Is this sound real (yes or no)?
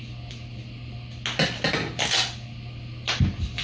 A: yes